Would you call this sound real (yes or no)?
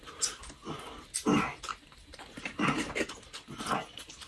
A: yes